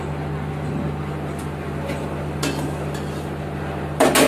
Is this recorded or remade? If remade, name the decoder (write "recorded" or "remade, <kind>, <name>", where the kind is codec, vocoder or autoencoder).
recorded